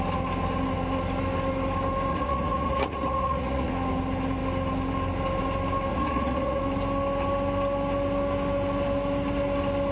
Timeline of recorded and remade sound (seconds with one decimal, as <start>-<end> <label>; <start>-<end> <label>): 0.0-2.1 recorded; 2.1-3.7 remade; 3.7-5.9 recorded; 5.9-6.6 remade; 6.6-9.9 recorded